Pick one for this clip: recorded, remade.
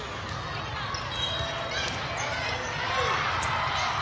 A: recorded